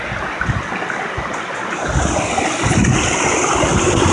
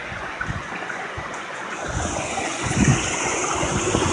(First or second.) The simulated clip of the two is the second